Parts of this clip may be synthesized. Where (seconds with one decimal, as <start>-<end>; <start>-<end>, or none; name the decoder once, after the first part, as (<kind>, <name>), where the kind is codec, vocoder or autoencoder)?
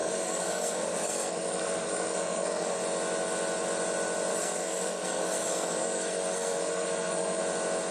0.0-2.8 (codec, SNAC); 4.3-7.4